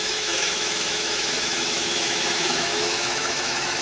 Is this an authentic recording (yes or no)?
no